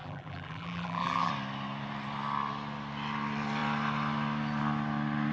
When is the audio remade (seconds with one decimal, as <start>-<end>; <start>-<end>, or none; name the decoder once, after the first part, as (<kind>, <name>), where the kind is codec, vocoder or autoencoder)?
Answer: 0.0-1.3 (vocoder, BigVGAN v2)